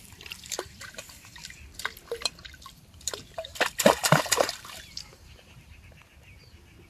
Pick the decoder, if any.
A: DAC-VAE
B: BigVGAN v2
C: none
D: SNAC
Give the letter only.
B